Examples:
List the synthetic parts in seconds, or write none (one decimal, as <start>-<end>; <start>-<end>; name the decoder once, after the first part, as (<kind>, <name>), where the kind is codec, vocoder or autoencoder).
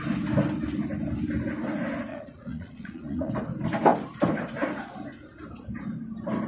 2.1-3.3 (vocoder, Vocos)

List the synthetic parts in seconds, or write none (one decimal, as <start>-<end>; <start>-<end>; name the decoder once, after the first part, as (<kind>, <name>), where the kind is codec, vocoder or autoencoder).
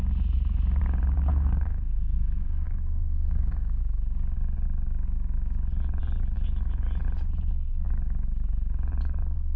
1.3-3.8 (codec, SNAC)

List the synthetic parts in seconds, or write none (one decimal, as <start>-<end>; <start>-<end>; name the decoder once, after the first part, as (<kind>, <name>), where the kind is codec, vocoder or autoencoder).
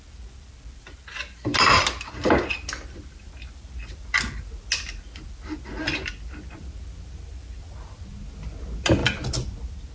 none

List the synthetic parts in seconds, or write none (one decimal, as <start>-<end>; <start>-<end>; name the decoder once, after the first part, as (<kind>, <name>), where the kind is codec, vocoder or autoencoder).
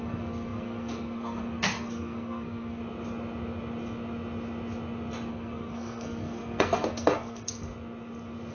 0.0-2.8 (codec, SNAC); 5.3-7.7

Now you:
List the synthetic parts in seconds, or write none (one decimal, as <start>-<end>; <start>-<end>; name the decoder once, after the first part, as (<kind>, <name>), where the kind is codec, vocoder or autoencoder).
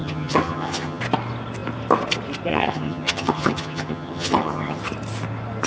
0.0-1.0 (vocoder, HiFi-GAN); 2.5-4.8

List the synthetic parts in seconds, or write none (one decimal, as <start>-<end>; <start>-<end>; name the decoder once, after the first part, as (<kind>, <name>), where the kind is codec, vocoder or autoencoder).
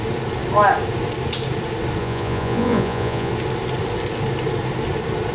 2.0-3.3 (vocoder, Vocos)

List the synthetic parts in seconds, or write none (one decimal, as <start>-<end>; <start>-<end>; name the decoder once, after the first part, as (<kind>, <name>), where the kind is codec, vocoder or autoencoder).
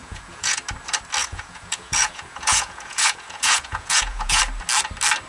0.0-0.6 (vocoder, Vocos); 1.2-4.4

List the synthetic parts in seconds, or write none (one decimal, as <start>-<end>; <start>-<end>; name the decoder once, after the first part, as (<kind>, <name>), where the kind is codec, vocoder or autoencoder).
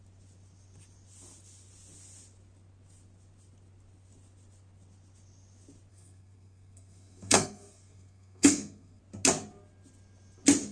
5.9-9.0 (codec, SNAC)